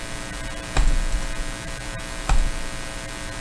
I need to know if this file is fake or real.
real